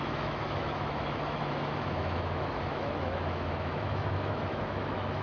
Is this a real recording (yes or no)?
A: no